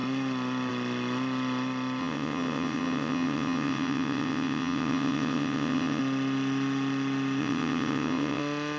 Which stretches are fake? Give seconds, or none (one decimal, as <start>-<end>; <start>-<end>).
2.0-6.0; 7.4-8.4